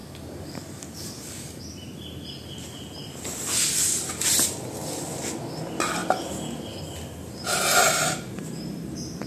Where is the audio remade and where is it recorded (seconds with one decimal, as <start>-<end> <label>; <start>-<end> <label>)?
0.0-1.6 remade; 1.6-9.3 recorded